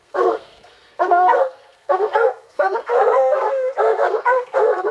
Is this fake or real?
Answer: fake